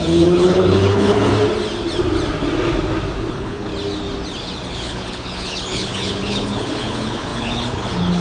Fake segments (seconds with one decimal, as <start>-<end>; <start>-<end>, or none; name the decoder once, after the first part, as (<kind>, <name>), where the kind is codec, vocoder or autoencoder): 0.0-1.3 (codec, HILCodec); 3.3-3.7; 4.7-8.2